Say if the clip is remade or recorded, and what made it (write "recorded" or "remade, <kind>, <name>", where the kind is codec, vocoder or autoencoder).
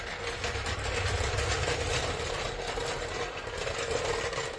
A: recorded